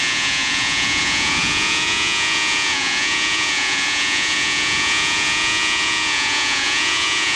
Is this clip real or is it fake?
fake